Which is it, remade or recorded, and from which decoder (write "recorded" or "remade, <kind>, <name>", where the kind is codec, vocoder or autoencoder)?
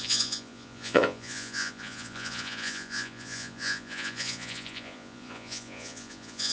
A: remade, vocoder, Vocos